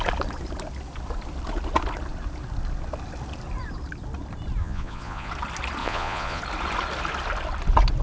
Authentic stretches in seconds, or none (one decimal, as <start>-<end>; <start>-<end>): 0.0-4.6; 5.3-5.8; 6.4-8.0